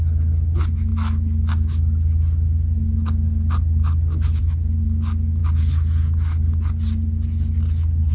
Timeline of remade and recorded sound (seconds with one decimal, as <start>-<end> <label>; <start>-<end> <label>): 0.0-8.1 recorded